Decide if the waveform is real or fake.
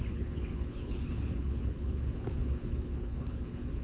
fake